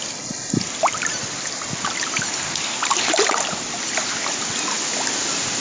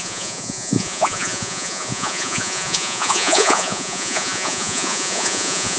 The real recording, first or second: first